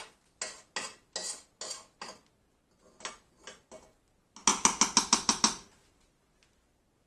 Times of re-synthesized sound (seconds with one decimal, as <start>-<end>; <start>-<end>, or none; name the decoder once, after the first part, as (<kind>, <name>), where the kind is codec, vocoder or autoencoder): none